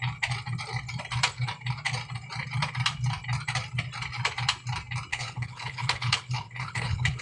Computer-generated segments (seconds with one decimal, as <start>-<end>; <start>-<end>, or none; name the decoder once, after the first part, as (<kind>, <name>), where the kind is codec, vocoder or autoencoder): 5.1-7.2 (codec, HILCodec)